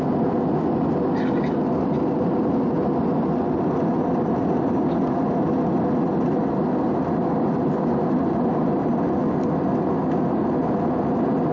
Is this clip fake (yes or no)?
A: no